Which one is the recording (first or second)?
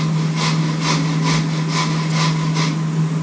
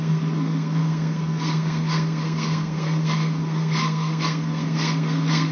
first